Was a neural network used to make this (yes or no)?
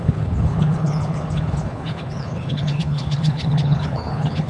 yes